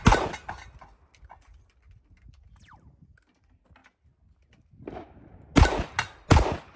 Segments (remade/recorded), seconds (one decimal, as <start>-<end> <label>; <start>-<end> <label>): 0.0-6.8 recorded

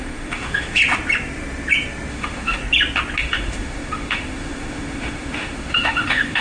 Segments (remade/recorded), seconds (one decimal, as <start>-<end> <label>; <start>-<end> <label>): 0.0-0.8 remade; 0.8-2.1 recorded; 2.1-2.6 remade; 2.6-3.2 recorded; 3.2-6.4 remade

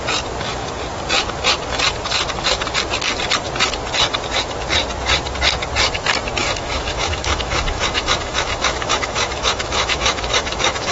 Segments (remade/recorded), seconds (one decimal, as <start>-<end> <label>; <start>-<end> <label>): 0.0-6.4 recorded; 6.4-10.9 remade

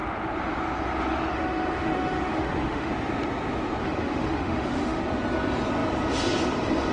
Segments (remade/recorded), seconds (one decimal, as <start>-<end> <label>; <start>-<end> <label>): 0.0-1.3 recorded; 1.3-2.9 remade; 2.9-3.8 recorded; 3.8-5.0 remade; 5.0-6.9 recorded

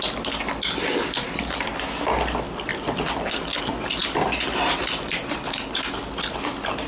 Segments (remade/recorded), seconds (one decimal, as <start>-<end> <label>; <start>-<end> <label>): 0.0-6.9 recorded

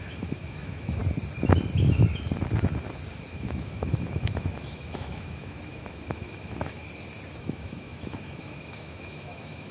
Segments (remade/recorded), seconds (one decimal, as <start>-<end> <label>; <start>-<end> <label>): 0.0-1.0 remade; 1.0-3.3 recorded; 3.3-6.8 remade; 6.8-7.4 recorded; 7.4-9.7 remade

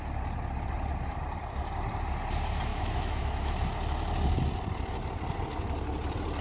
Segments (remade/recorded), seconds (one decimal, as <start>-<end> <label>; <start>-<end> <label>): 0.0-2.7 recorded; 2.7-3.5 remade; 3.5-6.4 recorded